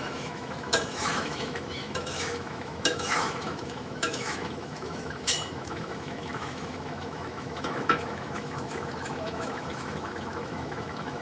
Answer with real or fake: fake